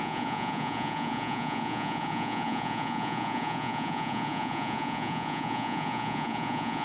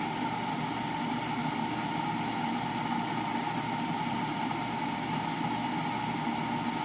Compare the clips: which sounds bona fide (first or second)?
second